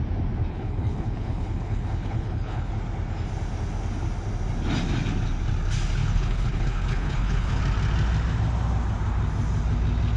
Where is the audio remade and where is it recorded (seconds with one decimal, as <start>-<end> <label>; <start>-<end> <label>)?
0.0-0.5 recorded; 0.5-2.7 remade; 2.7-6.0 recorded; 6.0-7.6 remade; 7.6-10.2 recorded